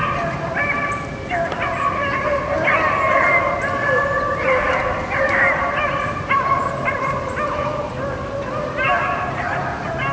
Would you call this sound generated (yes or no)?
yes